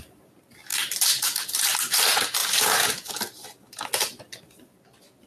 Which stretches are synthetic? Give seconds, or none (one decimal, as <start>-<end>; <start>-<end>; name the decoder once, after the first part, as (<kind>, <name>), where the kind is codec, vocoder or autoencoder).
0.7-1.6 (vocoder, BigVGAN v2); 2.4-3.1